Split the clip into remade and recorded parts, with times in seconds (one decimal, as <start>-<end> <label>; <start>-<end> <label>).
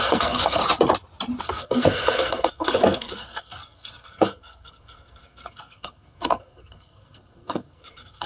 0.0-0.6 remade; 0.6-1.4 recorded; 1.4-8.3 remade